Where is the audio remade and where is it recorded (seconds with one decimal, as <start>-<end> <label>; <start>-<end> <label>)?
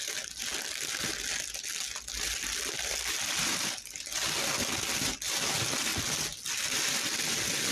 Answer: 0.0-0.5 remade; 0.5-5.1 recorded; 5.1-5.9 remade; 5.9-7.7 recorded